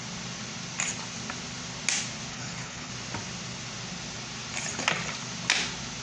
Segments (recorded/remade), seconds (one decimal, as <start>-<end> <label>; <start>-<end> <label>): 0.0-2.3 recorded; 2.3-2.9 remade; 2.9-6.0 recorded